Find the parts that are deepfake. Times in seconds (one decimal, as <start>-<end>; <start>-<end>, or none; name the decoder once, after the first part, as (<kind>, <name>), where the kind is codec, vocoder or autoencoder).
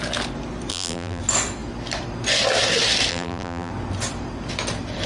0.7-1.2 (vocoder, BigVGAN v2); 3.1-3.7